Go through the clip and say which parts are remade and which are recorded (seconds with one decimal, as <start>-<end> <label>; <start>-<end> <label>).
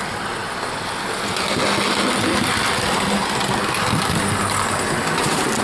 0.0-5.6 recorded